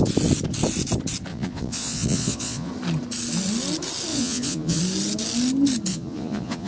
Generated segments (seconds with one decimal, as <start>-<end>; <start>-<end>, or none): 1.3-2.7; 4.1-4.8; 5.9-6.7